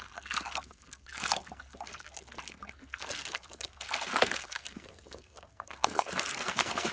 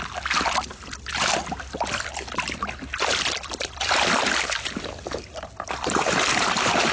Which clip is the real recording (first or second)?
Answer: second